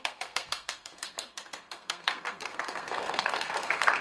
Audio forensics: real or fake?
fake